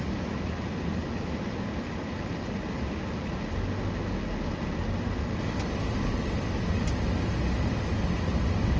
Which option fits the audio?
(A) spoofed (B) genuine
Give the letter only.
B